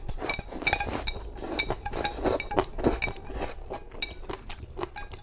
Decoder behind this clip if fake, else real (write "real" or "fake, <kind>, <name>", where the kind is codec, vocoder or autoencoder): real